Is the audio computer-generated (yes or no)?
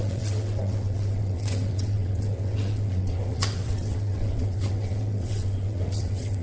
yes